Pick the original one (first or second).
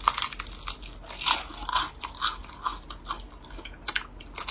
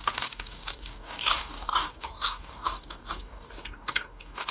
first